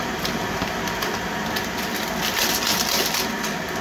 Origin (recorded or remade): recorded